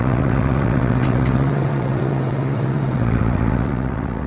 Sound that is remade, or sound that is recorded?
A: remade